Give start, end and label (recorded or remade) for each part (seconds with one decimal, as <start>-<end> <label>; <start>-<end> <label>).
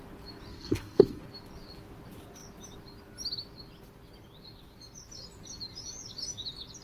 0.0-0.5 recorded; 0.5-1.2 remade; 1.2-6.8 recorded